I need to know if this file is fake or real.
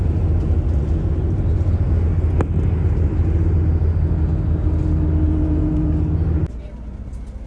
real